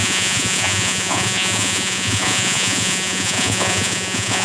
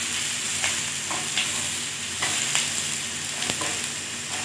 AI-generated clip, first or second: first